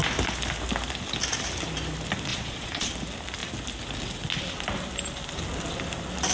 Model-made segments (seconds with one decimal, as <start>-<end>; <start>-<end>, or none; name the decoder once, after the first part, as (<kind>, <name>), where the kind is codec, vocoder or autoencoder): 2.3-2.9 (vocoder, Vocos)